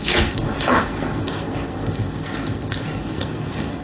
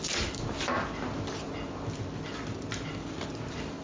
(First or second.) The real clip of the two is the second